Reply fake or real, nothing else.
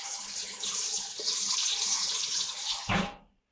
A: fake